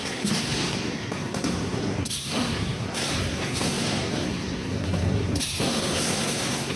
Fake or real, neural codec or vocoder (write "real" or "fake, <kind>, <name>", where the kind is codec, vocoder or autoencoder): fake, codec, SNAC